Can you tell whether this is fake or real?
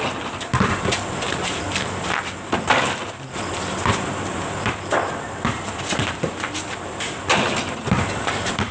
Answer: real